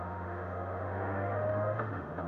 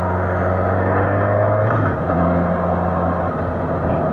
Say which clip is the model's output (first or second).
first